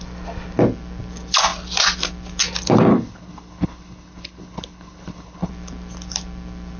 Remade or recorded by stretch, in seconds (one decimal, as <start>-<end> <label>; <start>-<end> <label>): 0.0-2.9 recorded; 2.9-5.5 remade; 5.5-6.8 recorded